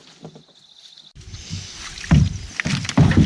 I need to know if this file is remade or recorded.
recorded